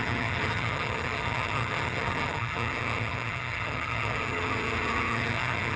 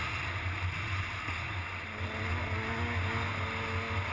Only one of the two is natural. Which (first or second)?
second